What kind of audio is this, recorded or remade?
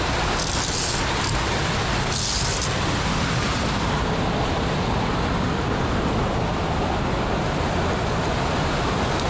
recorded